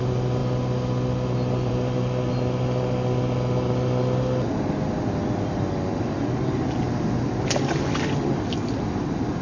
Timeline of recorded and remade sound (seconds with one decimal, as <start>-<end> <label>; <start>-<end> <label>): 0.0-9.4 recorded